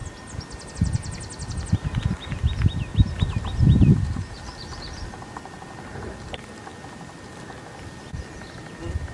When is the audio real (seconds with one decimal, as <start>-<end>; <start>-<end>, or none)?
0.0-2.9; 5.4-9.1